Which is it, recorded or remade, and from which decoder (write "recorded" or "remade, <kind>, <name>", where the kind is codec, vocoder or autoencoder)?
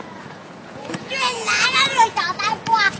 remade, vocoder, Vocos